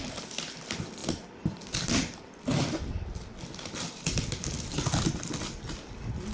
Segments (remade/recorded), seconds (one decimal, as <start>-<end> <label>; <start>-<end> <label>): 0.0-6.3 recorded